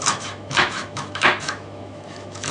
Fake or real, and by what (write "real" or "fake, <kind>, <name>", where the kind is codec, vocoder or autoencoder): fake, autoencoder, DAC-VAE